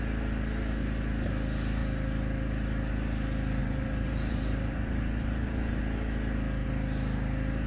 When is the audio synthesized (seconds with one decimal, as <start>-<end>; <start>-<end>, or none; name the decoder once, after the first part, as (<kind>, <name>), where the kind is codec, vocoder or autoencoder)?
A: 3.6-5.8 (vocoder, BigVGAN v2)